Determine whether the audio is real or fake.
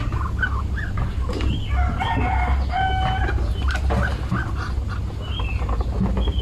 real